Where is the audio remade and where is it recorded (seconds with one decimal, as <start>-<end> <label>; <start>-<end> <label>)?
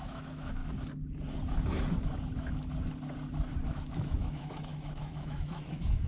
0.0-0.6 remade; 0.6-3.7 recorded; 3.7-6.1 remade